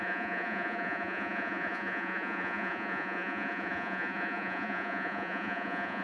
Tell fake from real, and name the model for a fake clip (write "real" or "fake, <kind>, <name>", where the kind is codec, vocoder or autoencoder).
fake, vocoder, Vocos